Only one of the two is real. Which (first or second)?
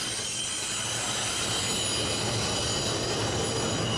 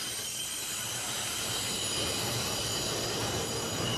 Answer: first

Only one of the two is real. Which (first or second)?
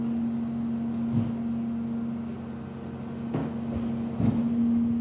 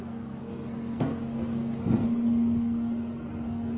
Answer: first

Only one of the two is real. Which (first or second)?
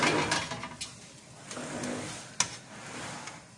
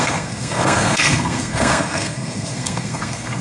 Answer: first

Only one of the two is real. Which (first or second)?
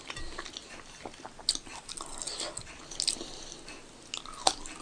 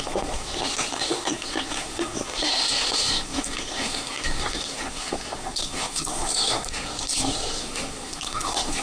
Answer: first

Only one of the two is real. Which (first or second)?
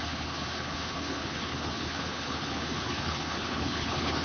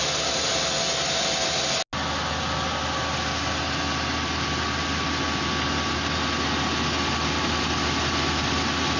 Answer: second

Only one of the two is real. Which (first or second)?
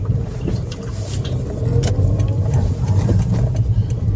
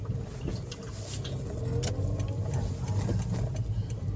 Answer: second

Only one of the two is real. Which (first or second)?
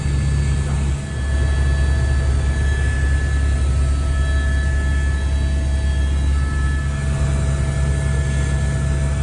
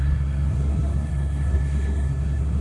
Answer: first